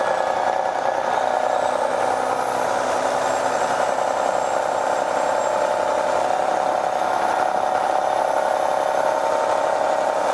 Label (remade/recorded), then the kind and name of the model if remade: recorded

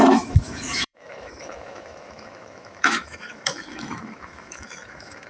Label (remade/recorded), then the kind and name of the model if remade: remade, autoencoder, DAC-VAE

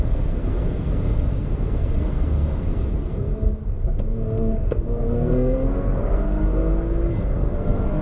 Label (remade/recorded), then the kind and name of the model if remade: remade, codec, SNAC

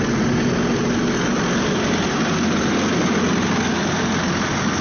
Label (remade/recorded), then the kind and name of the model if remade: recorded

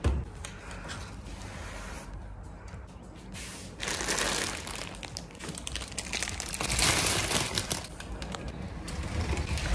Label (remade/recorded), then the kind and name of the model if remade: recorded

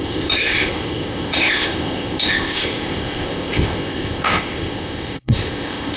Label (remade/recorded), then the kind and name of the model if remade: remade, codec, ZipCodec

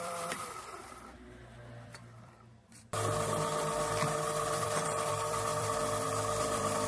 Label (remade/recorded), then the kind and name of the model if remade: remade, vocoder, BigVGAN v2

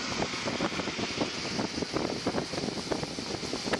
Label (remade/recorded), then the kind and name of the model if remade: recorded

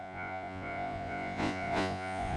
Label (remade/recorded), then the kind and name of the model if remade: remade, vocoder, Vocos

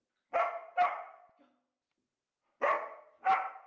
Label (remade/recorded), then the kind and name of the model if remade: recorded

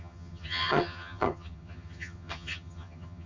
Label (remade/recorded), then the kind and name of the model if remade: remade, vocoder, HiFi-GAN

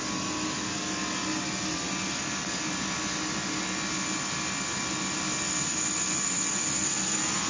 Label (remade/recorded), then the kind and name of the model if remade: recorded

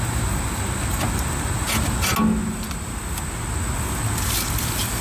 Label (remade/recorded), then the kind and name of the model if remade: recorded